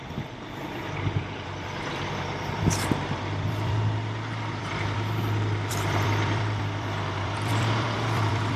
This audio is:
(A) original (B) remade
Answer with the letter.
B